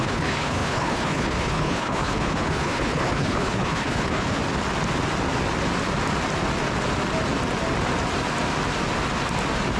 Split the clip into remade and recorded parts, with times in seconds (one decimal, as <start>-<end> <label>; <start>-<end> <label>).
0.0-4.4 remade; 4.4-9.8 recorded